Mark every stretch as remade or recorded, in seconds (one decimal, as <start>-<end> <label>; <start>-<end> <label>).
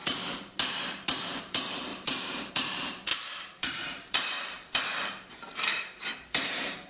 0.0-1.4 recorded; 1.4-3.1 remade; 3.1-3.6 recorded; 3.6-6.9 remade